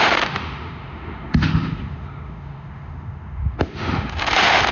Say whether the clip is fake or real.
fake